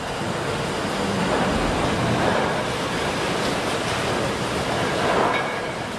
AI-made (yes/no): no